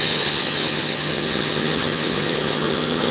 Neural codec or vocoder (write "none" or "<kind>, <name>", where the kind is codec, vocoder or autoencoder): vocoder, HiFi-GAN